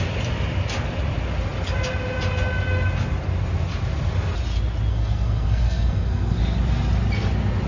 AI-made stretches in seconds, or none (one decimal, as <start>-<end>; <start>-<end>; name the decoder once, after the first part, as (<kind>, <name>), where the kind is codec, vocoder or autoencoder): 4.9-6.4 (codec, SNAC)